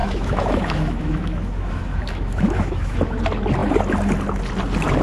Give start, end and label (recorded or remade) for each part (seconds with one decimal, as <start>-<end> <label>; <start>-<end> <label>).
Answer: 0.0-3.0 remade; 3.0-5.0 recorded